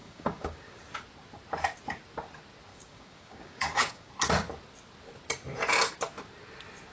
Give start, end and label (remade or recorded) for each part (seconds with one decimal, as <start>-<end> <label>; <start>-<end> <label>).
0.0-0.8 remade; 0.8-2.7 recorded; 2.7-4.1 remade; 4.1-6.9 recorded